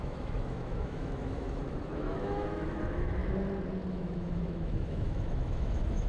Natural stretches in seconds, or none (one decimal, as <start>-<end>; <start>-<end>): 3.2-3.9